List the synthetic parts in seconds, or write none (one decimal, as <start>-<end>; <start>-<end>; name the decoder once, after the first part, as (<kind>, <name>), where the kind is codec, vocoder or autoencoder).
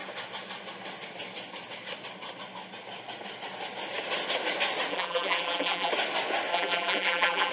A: 4.9-5.9 (vocoder, BigVGAN v2); 6.5-7.5